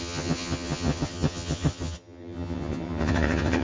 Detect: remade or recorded remade